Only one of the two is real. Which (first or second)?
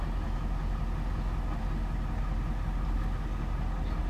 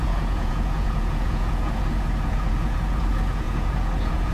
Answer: first